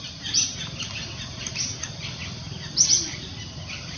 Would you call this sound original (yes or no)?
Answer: yes